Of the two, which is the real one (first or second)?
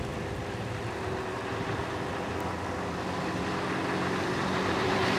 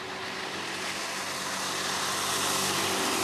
second